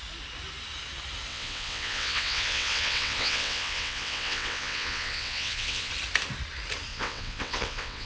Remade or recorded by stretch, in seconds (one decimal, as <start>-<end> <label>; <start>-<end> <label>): 0.0-1.3 recorded; 1.3-5.9 remade; 5.9-6.9 recorded; 6.9-8.1 remade